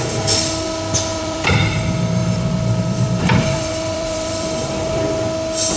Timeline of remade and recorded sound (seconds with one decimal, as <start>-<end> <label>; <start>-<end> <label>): 0.0-1.1 recorded; 1.1-1.8 remade; 1.8-2.2 recorded; 2.2-5.0 remade; 5.0-5.8 recorded